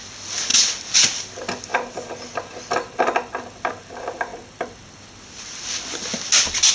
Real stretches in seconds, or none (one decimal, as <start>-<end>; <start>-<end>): 0.0-6.7